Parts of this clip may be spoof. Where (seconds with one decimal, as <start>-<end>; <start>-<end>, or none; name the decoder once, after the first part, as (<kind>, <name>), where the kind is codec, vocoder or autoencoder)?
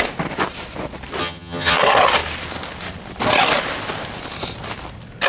1.2-1.8 (vocoder, HiFi-GAN)